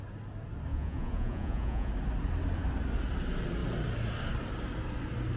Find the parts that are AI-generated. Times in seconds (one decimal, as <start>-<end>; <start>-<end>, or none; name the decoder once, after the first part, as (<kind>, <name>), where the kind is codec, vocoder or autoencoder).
0.7-1.9 (vocoder, Vocos)